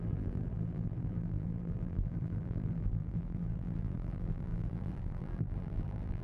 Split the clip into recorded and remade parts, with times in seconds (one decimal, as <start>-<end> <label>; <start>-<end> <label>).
0.0-6.2 remade

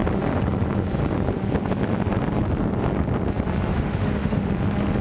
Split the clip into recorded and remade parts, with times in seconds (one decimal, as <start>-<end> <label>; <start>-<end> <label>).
0.0-3.7 recorded; 3.7-4.5 remade; 4.5-5.0 recorded

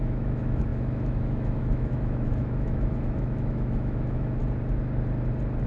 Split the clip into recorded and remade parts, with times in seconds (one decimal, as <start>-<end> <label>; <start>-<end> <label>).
0.0-4.4 remade; 4.4-5.7 recorded

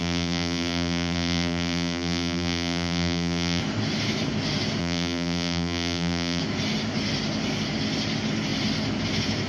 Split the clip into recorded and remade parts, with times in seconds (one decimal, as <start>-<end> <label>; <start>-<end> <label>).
0.0-3.6 remade; 3.6-4.8 recorded; 4.8-6.4 remade; 6.4-9.5 recorded

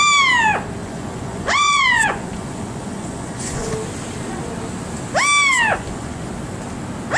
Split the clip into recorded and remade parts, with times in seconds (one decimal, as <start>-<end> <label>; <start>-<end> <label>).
0.0-0.8 recorded; 0.8-3.7 remade; 3.7-5.7 recorded; 5.7-6.3 remade; 6.3-7.2 recorded

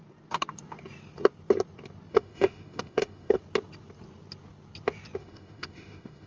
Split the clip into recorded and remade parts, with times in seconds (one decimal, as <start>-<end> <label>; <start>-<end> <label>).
0.0-2.1 recorded; 2.1-3.4 remade; 3.4-5.2 recorded; 5.2-6.3 remade

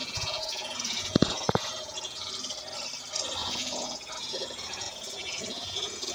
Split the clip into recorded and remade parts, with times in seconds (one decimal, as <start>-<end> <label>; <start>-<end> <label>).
0.0-2.3 remade; 2.3-3.4 recorded; 3.4-6.1 remade

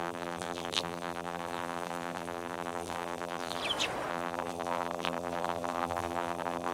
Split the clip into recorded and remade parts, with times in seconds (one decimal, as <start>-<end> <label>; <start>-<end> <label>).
0.0-3.6 remade; 3.6-4.1 recorded; 4.1-6.7 remade